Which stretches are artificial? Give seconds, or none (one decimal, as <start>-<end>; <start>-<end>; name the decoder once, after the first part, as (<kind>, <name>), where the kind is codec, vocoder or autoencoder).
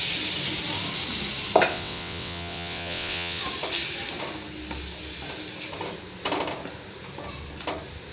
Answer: 1.7-3.4 (vocoder, WaveNeXt)